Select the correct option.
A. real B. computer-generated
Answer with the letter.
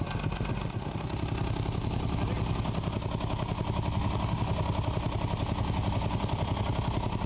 A